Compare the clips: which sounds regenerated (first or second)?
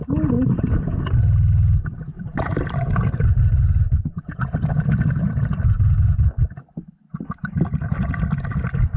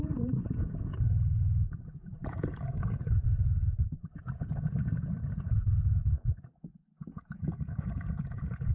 second